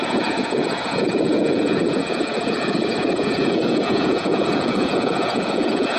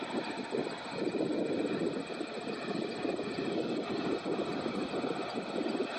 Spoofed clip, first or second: first